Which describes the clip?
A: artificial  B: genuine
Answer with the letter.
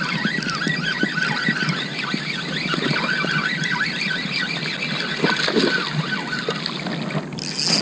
B